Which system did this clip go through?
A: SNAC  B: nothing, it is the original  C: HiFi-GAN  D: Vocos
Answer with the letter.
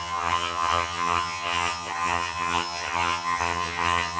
C